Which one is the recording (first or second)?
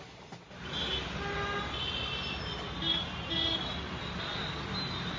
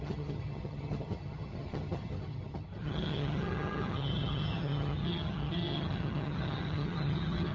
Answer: first